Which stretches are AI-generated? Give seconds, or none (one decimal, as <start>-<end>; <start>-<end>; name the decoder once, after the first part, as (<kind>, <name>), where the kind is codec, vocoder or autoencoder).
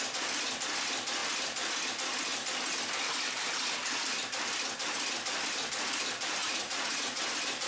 6.4-7.2 (vocoder, Vocos)